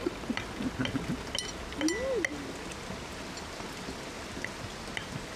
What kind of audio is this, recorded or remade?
recorded